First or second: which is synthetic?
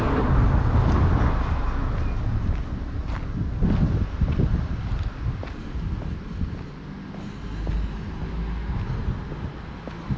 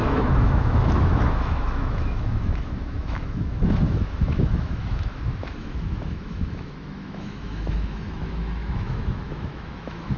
second